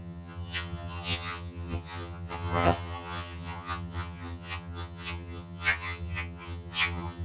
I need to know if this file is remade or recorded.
remade